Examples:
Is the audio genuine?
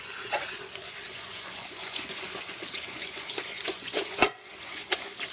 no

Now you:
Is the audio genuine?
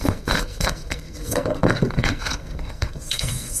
no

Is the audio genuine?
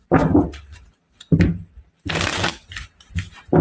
yes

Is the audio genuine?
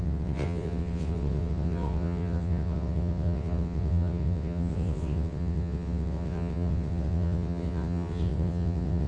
no